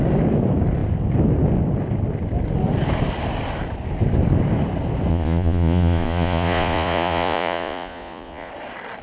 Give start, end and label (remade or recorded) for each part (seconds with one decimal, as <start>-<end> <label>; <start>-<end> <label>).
0.0-5.1 recorded; 5.1-8.5 remade; 8.5-9.0 recorded